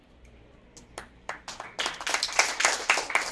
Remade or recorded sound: recorded